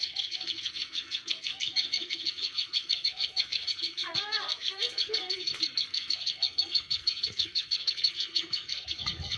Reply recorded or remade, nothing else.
remade